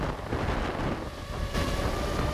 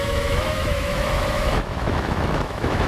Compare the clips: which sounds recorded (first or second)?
first